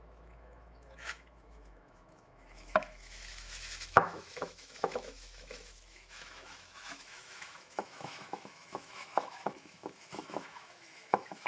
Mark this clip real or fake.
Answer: fake